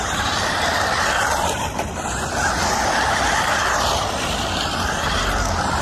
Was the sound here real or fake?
real